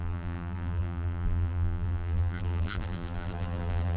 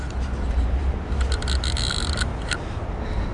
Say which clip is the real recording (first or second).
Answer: second